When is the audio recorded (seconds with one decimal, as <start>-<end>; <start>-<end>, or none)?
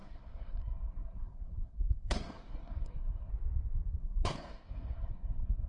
3.3-4.0